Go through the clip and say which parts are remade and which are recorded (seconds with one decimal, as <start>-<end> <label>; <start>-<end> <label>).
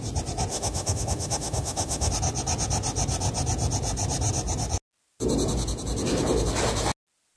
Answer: 0.0-0.5 recorded; 0.5-2.1 remade; 2.1-7.4 recorded